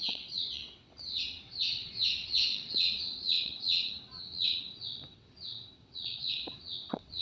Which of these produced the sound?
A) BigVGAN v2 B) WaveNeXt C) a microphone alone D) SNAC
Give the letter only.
B